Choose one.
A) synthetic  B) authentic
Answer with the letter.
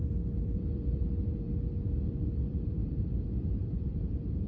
A